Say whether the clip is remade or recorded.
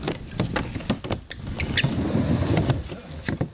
recorded